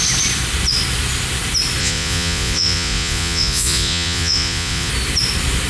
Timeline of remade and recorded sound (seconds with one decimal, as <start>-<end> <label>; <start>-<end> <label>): 0.0-1.8 recorded; 1.8-4.9 remade; 4.9-5.7 recorded